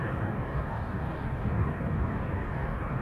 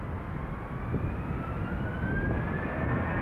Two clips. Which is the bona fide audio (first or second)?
second